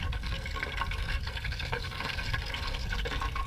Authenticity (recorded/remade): remade